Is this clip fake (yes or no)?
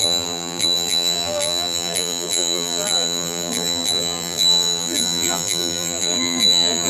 yes